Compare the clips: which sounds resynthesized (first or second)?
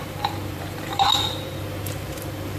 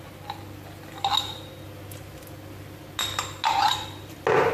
first